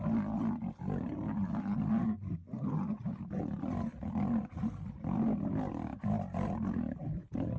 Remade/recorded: recorded